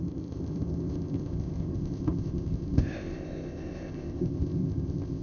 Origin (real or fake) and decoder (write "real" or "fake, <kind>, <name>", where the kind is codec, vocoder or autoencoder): fake, codec, ZipCodec